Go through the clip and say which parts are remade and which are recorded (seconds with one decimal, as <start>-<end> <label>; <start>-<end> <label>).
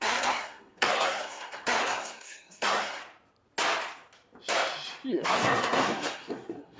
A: 0.0-3.0 remade; 3.0-5.1 recorded; 5.1-6.8 remade